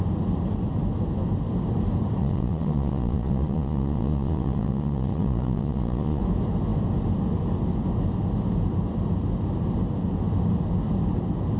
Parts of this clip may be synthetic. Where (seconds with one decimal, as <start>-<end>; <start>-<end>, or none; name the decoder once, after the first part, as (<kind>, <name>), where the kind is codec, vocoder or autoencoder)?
2.2-6.2 (vocoder, Vocos)